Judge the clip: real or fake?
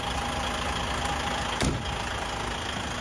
real